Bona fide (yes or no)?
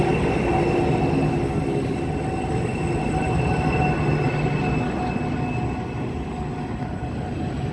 yes